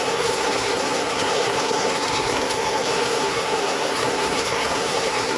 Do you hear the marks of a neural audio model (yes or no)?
yes